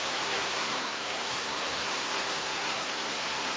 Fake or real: fake